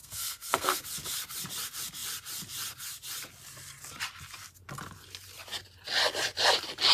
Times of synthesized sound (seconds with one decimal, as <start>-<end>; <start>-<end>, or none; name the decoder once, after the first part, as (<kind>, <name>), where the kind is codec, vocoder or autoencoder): 0.0-0.8 (codec, SNAC)